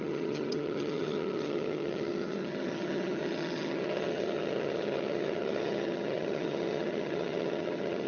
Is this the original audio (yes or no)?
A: no